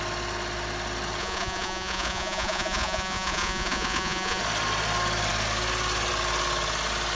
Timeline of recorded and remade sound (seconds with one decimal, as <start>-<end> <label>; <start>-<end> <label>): 0.0-1.2 recorded; 1.2-4.4 remade; 4.4-7.1 recorded